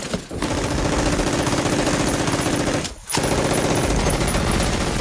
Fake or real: real